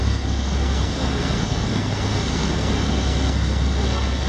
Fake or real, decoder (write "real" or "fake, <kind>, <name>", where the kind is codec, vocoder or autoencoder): fake, codec, SNAC